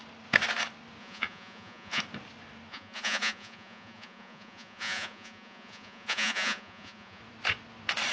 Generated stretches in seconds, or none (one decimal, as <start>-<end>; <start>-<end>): 1.0-2.0; 2.7-7.2

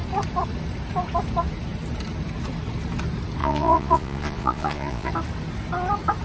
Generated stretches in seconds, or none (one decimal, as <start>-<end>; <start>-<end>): 3.4-5.1

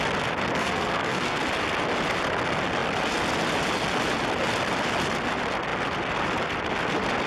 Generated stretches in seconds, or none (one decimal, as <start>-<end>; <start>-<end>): 0.5-1.4

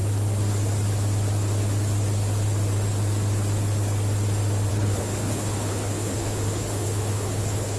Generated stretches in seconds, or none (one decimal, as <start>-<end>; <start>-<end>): 4.7-7.8